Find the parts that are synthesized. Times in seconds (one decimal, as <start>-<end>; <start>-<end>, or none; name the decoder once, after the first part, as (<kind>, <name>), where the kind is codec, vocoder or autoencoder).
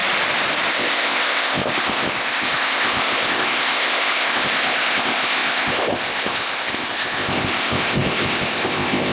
0.7-9.1 (codec, ZipCodec)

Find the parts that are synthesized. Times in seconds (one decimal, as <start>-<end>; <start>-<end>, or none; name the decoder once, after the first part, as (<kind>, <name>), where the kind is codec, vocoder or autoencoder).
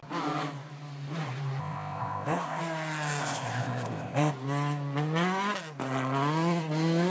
1.6-2.6 (codec, ZipCodec); 3.2-4.3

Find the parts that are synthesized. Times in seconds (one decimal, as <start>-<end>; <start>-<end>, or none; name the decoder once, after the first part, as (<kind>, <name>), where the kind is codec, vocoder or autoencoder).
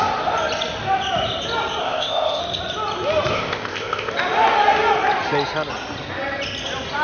1.8-2.4 (codec, ZipCodec); 3.3-4.1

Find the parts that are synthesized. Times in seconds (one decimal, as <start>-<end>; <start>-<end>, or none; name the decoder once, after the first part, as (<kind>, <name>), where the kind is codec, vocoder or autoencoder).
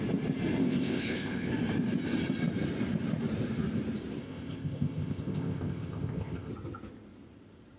0.6-1.5 (codec, ZipCodec); 4.2-6.5